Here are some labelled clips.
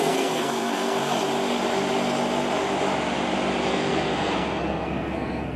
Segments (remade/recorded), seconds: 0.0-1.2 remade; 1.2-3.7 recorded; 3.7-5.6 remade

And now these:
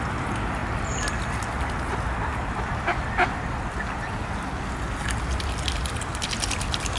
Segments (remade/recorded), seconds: 0.0-7.0 recorded

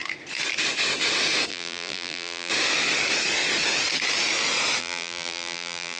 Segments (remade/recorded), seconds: 0.0-1.5 recorded; 1.5-2.5 remade; 2.5-4.8 recorded; 4.8-6.0 remade